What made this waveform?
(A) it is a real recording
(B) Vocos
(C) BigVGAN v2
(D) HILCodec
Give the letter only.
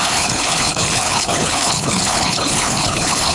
D